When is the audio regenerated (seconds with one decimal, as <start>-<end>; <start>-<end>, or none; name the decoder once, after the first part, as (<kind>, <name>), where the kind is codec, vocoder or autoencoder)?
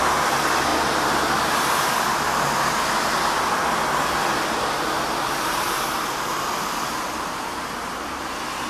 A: none